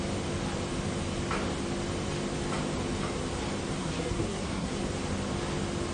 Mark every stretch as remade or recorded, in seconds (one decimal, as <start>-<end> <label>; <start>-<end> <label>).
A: 0.0-3.8 recorded; 3.8-4.7 remade; 4.7-5.9 recorded